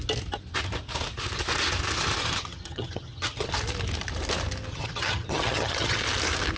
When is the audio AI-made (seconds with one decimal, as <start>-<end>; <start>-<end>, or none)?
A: 2.2-3.5; 4.7-6.0